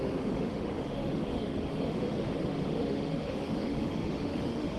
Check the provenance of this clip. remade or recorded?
remade